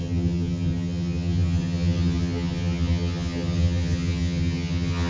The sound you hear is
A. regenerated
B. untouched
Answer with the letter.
A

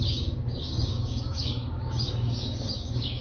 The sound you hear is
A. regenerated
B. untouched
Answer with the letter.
A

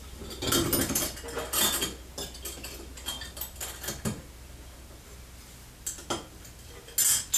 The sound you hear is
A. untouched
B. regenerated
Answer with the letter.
A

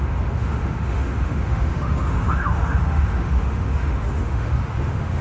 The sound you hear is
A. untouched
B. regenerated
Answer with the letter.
B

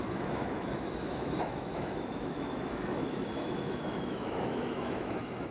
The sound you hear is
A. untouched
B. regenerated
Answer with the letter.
B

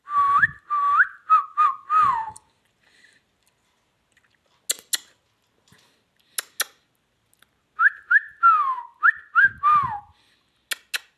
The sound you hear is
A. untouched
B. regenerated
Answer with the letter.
A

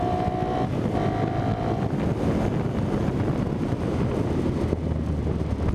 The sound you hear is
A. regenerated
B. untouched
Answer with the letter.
B